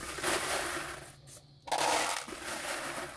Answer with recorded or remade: recorded